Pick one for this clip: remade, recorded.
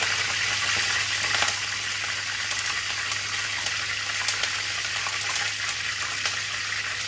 recorded